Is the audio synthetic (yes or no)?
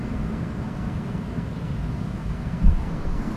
yes